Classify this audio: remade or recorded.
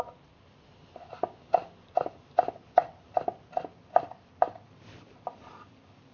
recorded